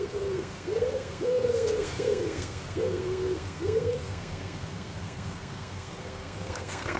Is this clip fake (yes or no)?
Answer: yes